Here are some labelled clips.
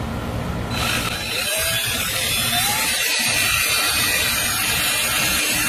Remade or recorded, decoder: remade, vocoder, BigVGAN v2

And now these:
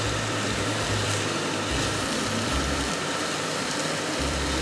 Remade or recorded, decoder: remade, vocoder, BigVGAN v2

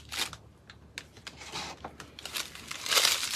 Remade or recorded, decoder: recorded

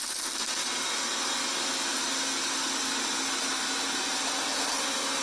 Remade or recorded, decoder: recorded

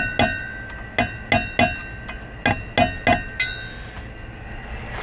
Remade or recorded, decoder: recorded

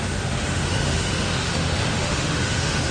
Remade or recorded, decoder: remade, autoencoder, DAC-VAE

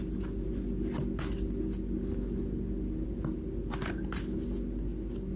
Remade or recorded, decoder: recorded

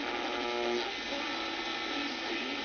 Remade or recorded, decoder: recorded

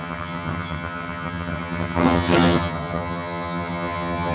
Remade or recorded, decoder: remade, vocoder, HiFi-GAN